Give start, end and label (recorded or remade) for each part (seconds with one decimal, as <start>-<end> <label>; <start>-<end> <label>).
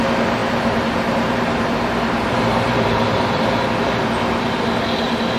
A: 0.0-0.4 recorded; 0.4-3.6 remade; 3.6-5.4 recorded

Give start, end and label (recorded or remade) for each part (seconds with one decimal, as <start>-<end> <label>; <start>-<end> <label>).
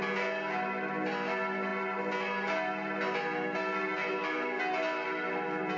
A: 0.0-5.8 recorded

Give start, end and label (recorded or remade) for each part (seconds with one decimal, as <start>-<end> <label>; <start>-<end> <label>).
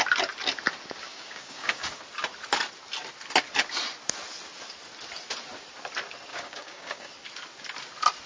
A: 0.0-1.1 recorded; 1.1-1.9 remade; 1.9-6.3 recorded; 6.3-7.1 remade; 7.1-8.3 recorded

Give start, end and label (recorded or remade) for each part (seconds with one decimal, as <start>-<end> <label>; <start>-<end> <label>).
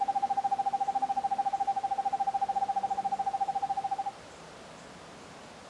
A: 0.0-5.7 recorded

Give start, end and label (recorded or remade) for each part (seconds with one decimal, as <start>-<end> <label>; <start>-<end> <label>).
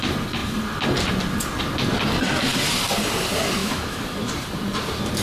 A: 0.0-3.6 recorded; 3.6-4.3 remade; 4.3-5.2 recorded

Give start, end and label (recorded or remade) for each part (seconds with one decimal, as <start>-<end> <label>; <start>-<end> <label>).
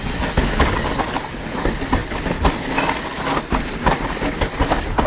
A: 0.0-5.1 recorded